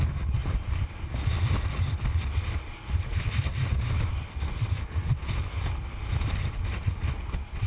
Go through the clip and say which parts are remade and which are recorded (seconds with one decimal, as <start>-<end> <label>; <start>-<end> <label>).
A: 0.0-0.4 recorded; 0.4-1.7 remade; 1.7-3.5 recorded; 3.5-6.1 remade; 6.1-7.7 recorded